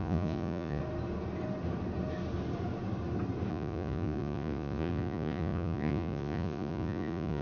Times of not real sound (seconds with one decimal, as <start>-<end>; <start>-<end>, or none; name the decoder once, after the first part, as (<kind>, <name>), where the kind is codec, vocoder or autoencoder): 0.0-0.8 (vocoder, Vocos); 3.5-7.4